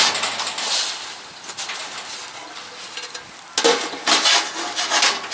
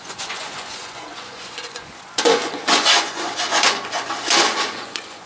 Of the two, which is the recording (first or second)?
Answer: first